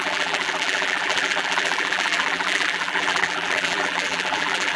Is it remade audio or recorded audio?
remade